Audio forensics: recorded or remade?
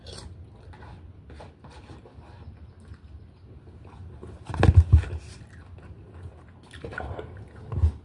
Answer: recorded